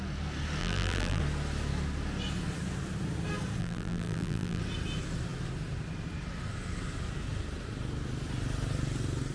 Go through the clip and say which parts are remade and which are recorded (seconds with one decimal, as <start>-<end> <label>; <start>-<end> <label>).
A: 0.0-0.6 recorded; 0.6-1.2 remade; 1.2-3.6 recorded; 3.6-4.6 remade; 4.6-9.3 recorded